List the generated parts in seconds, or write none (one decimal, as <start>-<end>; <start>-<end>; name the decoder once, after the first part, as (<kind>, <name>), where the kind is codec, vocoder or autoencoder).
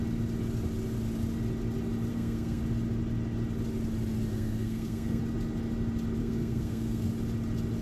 2.1-2.6 (codec, SNAC); 4.3-5.2; 6.2-7.1